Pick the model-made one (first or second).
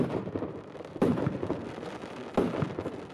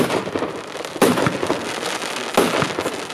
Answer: first